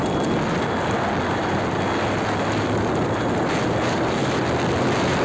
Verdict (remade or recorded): recorded